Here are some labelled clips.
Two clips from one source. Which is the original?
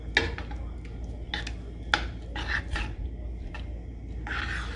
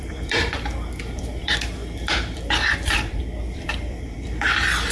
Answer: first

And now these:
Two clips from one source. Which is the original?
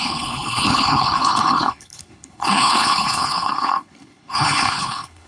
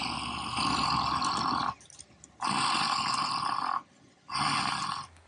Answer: second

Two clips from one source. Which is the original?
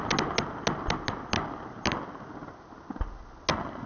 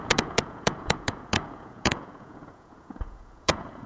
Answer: first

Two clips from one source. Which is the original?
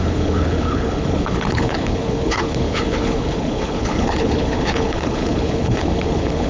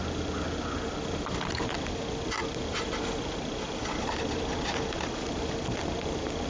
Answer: second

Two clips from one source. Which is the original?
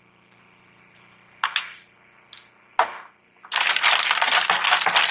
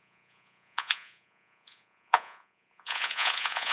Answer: first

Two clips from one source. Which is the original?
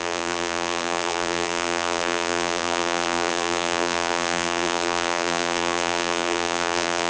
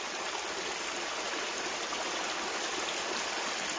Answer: second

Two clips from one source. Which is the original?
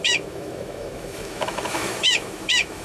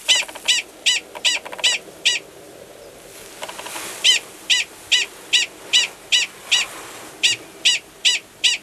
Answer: second